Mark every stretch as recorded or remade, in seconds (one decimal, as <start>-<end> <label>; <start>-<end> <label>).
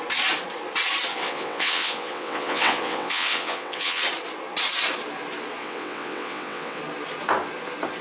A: 0.0-1.1 recorded; 1.1-4.0 remade; 4.0-5.6 recorded; 5.6-6.8 remade; 6.8-8.0 recorded